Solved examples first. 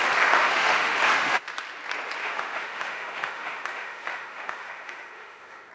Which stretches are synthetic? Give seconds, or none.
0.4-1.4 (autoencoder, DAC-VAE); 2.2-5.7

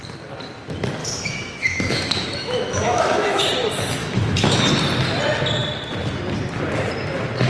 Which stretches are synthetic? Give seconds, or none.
1.0-3.4 (autoencoder, DAC-VAE); 4.0-4.6

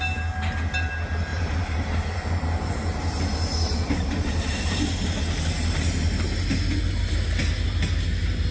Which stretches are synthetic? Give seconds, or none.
1.3-2.7 (vocoder, BigVGAN v2); 3.5-4.7

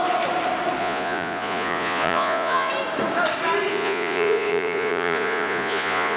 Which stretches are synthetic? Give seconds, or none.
0.8-2.7 (vocoder, Vocos); 3.7-6.2

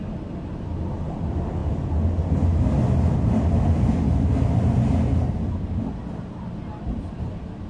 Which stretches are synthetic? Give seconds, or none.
none